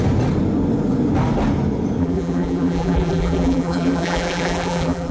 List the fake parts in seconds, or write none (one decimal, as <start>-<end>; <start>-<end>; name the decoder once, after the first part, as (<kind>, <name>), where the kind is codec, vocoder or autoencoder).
2.0-5.1 (vocoder, BigVGAN v2)